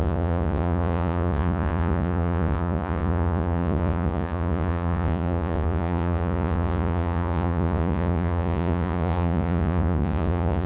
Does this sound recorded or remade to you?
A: remade